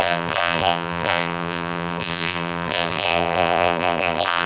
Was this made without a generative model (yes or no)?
no